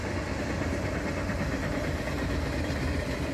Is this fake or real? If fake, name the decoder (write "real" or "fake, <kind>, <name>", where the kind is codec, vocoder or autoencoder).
real